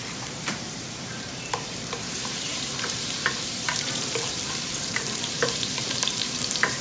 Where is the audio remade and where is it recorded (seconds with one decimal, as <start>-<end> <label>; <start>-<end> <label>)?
0.0-6.8 remade